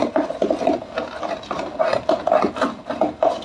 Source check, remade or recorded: recorded